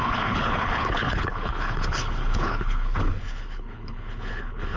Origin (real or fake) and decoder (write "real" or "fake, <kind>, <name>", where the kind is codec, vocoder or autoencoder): fake, codec, HILCodec